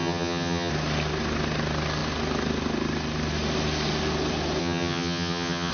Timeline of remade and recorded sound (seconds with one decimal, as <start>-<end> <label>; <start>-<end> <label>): 0.0-0.7 remade; 0.7-4.6 recorded; 4.6-5.7 remade